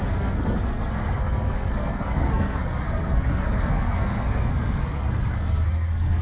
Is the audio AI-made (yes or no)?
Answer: yes